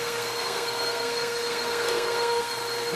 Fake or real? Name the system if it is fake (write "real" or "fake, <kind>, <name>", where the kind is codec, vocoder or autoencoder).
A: fake, codec, SNAC